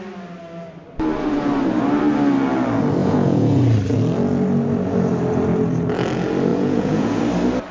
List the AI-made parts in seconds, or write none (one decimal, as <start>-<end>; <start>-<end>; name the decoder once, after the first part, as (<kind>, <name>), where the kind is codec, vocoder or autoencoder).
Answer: 3.0-3.6 (vocoder, Vocos); 6.5-7.2